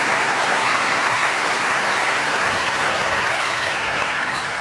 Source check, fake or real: fake